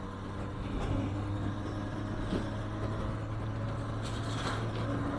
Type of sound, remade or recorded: recorded